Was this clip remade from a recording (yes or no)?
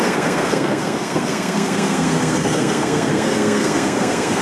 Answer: yes